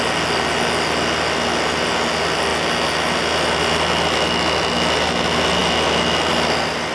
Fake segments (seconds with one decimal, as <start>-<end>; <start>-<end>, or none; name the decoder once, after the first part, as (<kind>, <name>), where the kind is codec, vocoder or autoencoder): none